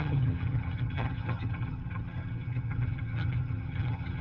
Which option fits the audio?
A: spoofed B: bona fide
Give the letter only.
A